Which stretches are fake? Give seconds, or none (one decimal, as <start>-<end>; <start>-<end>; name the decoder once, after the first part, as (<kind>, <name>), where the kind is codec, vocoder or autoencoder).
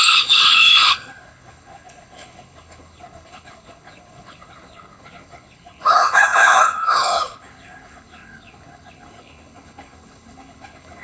0.0-11.0 (codec, HILCodec)